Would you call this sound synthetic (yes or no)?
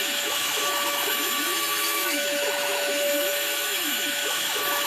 yes